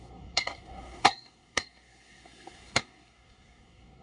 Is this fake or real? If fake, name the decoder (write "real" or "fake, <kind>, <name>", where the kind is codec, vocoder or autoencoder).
fake, codec, SNAC